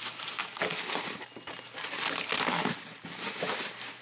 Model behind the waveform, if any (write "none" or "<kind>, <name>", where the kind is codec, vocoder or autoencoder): none